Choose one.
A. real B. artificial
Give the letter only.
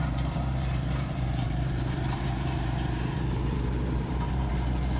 B